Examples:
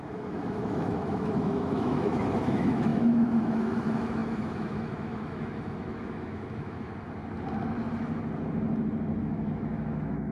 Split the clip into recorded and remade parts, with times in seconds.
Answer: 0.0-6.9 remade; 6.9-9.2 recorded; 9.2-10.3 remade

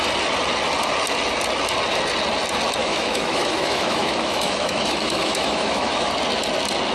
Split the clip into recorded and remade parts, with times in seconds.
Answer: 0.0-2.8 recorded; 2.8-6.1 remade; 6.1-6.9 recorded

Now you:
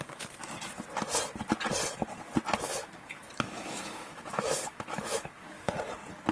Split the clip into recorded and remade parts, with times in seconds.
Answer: 0.0-2.7 recorded; 2.7-5.7 remade; 5.7-6.3 recorded

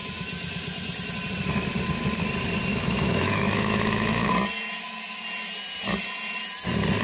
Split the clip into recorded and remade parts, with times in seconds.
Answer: 0.0-2.7 recorded; 2.7-4.3 remade; 4.3-7.0 recorded

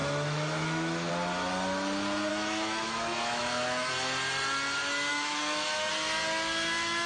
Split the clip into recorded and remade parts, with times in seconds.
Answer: 0.0-1.1 remade; 1.1-2.3 recorded; 2.3-3.9 remade; 3.9-5.1 recorded; 5.1-5.9 remade; 5.9-7.1 recorded

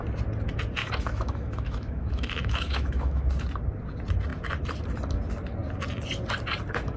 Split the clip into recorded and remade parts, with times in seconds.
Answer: 0.0-0.8 recorded; 0.8-3.3 remade; 3.3-7.0 recorded

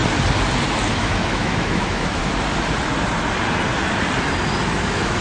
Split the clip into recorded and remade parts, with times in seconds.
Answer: 0.0-0.9 recorded; 0.9-2.2 remade; 2.2-4.6 recorded; 4.6-5.2 remade

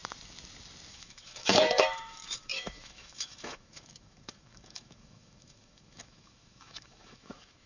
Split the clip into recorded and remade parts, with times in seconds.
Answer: 0.0-0.9 recorded; 0.9-7.7 remade